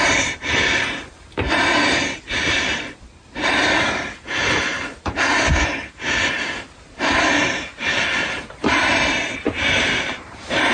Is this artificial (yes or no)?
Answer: yes